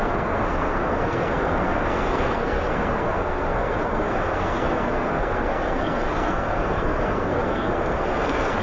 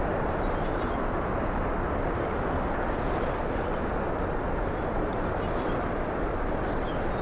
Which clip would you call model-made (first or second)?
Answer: first